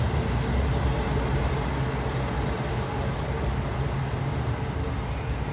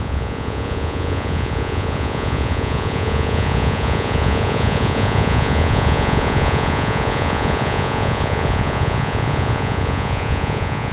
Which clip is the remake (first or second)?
second